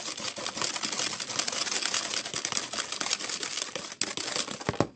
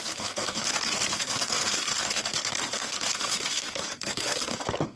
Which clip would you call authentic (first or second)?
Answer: first